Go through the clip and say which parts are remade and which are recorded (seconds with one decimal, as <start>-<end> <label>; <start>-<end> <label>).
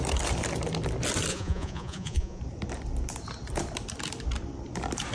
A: 0.0-1.3 recorded; 1.3-2.4 remade; 2.4-5.1 recorded